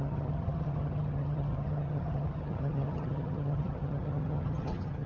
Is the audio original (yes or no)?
no